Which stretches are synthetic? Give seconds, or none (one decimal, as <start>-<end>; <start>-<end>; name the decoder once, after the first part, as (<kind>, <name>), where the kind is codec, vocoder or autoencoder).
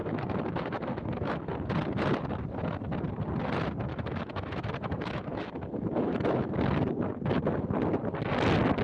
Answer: 0.0-1.5 (autoencoder, DAC-VAE); 3.9-6.5